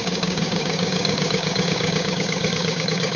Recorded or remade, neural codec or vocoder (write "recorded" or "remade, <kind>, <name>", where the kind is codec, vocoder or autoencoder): remade, codec, DAC